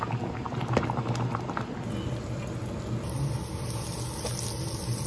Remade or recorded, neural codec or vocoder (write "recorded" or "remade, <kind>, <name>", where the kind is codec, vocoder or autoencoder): recorded